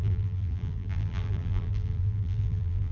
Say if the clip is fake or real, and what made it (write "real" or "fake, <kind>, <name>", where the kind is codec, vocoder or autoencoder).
fake, vocoder, BigVGAN v2